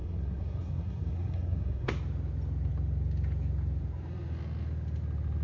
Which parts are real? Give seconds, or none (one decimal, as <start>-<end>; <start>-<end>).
1.9-5.4